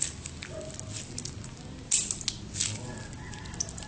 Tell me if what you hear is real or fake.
real